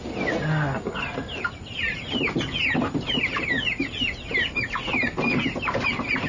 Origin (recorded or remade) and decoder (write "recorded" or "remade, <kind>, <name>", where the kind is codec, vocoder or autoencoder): recorded